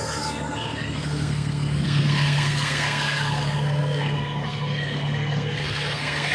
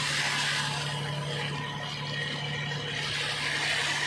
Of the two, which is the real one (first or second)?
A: second